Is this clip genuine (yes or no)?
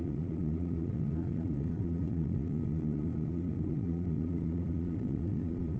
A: no